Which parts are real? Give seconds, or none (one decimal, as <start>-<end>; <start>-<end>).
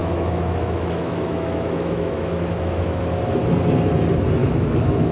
3.0-4.4